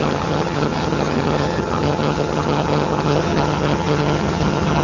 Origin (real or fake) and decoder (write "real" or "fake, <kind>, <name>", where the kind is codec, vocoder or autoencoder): fake, vocoder, HiFi-GAN